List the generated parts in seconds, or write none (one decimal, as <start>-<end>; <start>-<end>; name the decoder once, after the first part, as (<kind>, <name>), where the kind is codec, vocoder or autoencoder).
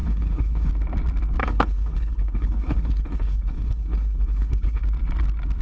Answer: 0.0-0.7 (codec, HILCodec); 1.4-4.8